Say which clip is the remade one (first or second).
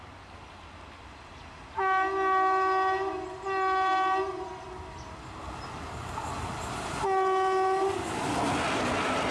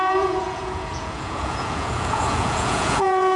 second